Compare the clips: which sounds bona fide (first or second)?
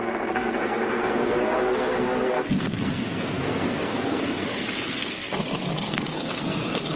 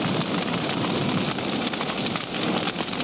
second